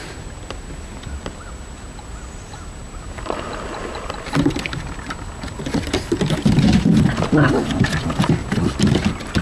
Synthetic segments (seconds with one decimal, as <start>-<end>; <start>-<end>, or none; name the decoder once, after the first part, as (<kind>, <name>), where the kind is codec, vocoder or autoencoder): none